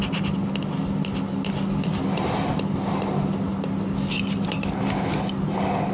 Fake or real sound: real